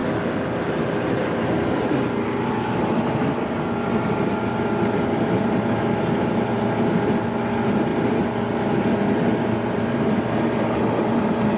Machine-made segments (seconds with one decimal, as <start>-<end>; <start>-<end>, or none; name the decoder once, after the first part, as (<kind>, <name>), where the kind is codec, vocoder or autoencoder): none

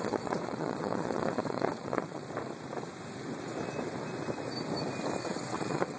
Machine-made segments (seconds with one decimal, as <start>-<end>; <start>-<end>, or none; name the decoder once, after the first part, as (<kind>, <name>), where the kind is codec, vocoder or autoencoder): 0.0-2.2 (vocoder, WaveNeXt); 5.2-6.0

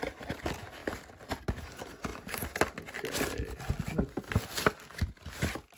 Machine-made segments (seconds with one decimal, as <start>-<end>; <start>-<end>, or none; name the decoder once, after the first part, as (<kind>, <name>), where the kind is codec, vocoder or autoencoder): none

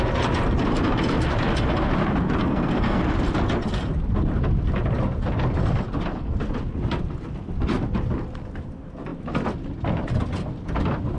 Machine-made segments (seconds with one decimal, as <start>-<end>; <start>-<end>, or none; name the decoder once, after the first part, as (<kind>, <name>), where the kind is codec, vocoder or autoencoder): 2.4-3.0 (codec, SNAC)